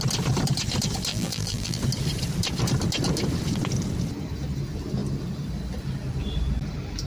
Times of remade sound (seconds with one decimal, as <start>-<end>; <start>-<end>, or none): 1.1-1.8